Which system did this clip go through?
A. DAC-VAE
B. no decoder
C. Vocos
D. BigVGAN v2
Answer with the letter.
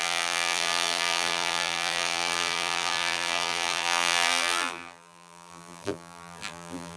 D